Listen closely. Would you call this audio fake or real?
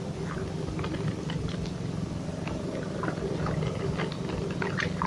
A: real